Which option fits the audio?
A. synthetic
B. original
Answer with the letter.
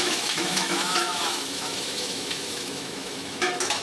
A